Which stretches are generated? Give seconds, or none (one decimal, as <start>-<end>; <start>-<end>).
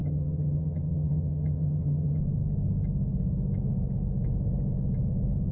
0.0-2.2